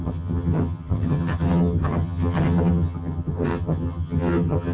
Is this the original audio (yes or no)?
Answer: no